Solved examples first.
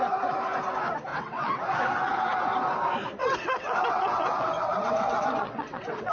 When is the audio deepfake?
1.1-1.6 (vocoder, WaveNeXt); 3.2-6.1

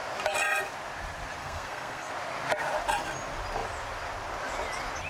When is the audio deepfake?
1.4-2.1 (codec, SNAC)